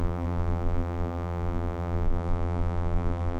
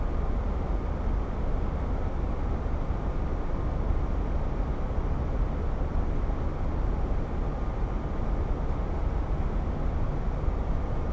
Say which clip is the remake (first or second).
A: first